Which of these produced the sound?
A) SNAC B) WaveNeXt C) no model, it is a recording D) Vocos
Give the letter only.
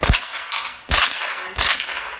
A